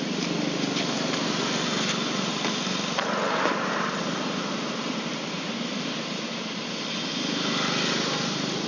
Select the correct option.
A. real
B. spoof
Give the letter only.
A